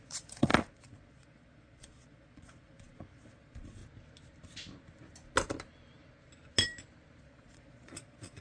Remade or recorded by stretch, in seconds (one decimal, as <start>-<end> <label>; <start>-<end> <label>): 0.0-3.8 remade; 3.8-7.2 recorded; 7.2-8.4 remade